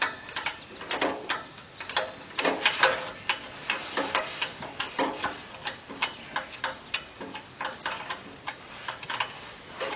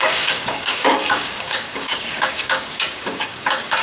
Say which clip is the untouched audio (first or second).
first